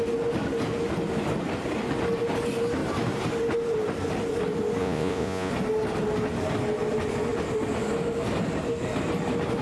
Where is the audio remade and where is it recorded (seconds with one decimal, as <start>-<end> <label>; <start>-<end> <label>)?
0.0-4.8 recorded; 4.8-5.5 remade; 5.5-9.6 recorded